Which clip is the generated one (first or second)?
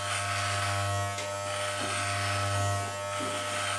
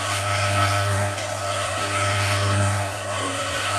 second